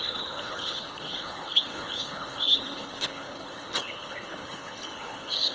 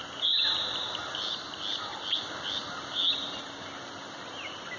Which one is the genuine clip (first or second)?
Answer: second